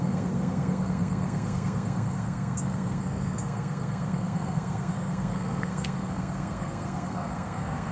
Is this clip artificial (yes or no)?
yes